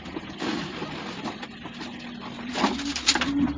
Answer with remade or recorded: recorded